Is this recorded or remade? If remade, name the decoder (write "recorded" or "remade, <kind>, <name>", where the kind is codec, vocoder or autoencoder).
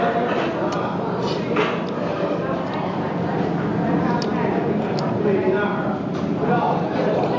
recorded